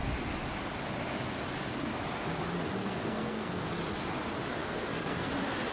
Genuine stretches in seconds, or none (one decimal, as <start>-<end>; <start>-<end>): 0.0-2.8; 3.6-4.6; 5.3-5.7